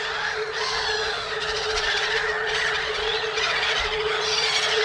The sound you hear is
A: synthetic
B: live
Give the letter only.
A